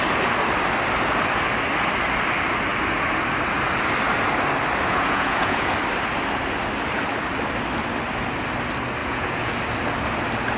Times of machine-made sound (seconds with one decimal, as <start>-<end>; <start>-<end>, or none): 4.9-5.7; 9.0-9.5